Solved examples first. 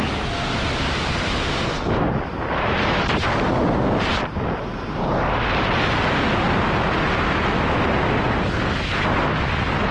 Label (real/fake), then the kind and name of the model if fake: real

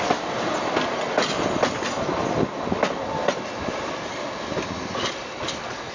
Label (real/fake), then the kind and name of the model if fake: real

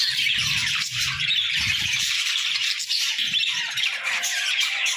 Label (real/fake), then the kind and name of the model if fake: fake, vocoder, BigVGAN v2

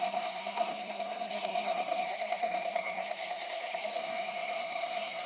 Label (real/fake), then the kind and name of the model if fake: fake, codec, SNAC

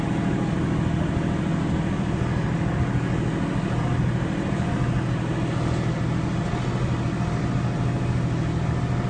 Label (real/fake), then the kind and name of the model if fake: real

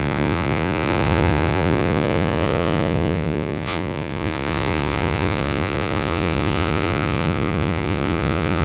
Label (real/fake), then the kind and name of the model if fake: fake, vocoder, Vocos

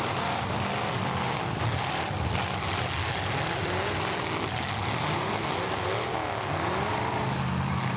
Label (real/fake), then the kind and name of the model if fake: real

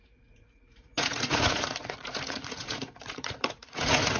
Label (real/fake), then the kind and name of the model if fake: fake, vocoder, Vocos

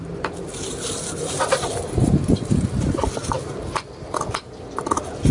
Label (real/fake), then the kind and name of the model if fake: real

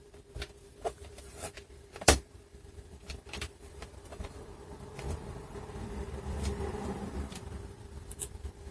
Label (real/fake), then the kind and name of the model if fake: fake, vocoder, BigVGAN v2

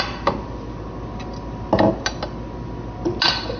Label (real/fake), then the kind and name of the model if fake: real